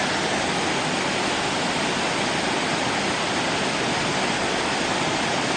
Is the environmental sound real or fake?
real